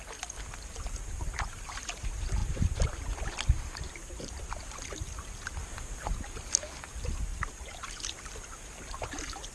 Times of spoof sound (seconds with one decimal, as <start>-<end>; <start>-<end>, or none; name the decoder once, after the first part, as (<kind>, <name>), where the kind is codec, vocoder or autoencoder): 2.4-4.6 (vocoder, BigVGAN v2); 5.6-6.1